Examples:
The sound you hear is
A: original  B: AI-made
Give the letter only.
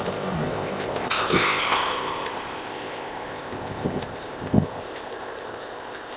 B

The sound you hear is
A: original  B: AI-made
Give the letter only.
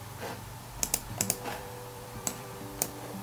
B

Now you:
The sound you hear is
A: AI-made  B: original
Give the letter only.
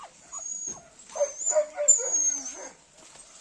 B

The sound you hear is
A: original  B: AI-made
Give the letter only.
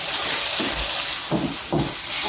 A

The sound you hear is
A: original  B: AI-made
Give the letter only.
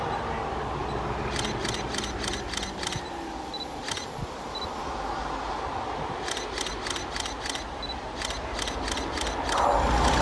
A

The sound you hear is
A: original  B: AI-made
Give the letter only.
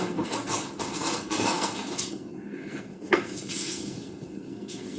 B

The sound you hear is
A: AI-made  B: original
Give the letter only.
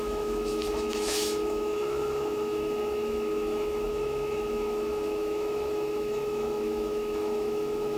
A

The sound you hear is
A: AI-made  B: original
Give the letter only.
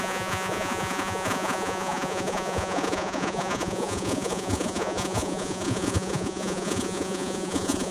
A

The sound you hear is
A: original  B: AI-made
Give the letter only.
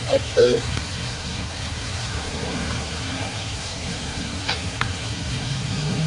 B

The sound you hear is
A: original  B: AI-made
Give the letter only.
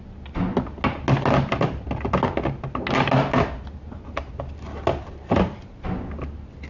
A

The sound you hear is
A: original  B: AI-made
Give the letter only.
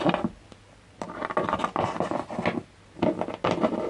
A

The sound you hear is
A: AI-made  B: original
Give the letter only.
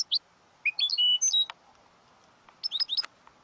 B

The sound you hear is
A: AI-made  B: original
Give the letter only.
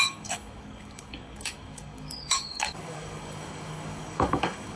A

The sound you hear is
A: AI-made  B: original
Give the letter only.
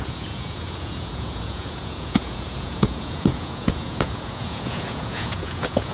A